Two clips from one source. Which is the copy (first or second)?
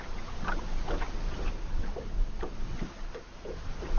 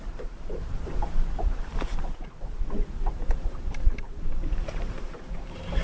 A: second